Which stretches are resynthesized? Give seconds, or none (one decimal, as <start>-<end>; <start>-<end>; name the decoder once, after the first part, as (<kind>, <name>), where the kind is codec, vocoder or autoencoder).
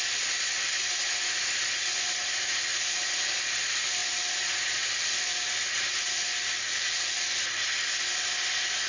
none